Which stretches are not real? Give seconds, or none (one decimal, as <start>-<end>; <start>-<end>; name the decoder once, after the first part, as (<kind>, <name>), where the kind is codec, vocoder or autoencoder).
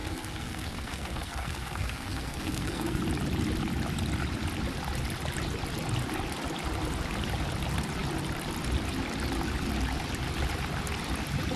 0.0-3.0 (codec, SNAC)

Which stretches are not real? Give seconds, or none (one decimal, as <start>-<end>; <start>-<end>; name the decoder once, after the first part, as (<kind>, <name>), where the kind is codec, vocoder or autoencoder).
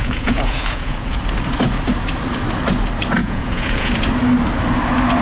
0.0-1.2 (vocoder, Vocos); 3.2-3.9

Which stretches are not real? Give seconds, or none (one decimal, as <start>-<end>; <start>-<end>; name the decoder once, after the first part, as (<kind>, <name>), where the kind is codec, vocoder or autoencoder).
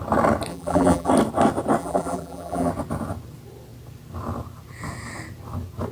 0.5-1.1 (vocoder, BigVGAN v2); 1.8-2.7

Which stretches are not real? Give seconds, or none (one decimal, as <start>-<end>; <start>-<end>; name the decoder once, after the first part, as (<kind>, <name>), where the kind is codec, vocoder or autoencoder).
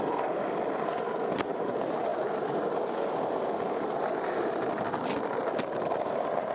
none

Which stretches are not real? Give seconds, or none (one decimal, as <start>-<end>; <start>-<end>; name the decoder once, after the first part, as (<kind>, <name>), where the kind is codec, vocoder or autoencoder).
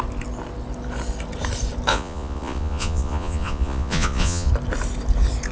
1.9-4.5 (vocoder, Vocos)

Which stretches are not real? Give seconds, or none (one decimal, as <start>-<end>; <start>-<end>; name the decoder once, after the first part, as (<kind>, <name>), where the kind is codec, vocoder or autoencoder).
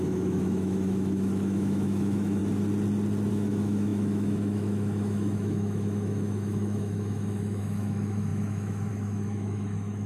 0.0-2.4 (autoencoder, DAC-VAE); 3.3-10.1